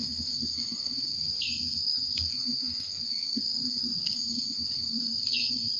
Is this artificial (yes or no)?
yes